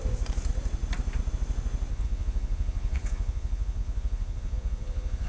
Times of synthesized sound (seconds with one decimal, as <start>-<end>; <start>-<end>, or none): 1.9-5.3